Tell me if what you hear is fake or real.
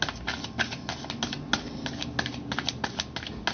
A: real